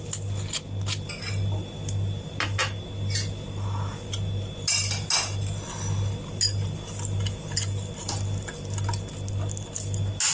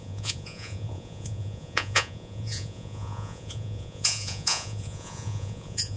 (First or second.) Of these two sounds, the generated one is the second